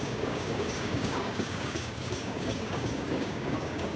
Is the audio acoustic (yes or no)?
no